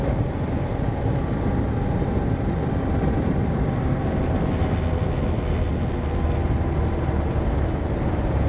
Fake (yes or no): no